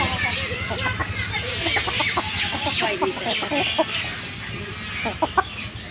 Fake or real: real